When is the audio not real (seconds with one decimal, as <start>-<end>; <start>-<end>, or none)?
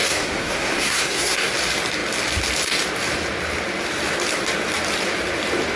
0.0-1.5